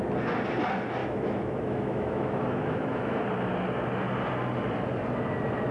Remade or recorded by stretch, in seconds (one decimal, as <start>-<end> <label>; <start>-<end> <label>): 0.0-1.0 recorded; 1.0-3.2 remade; 3.2-5.7 recorded